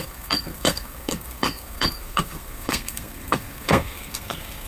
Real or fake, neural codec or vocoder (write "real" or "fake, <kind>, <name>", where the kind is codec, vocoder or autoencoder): fake, codec, SNAC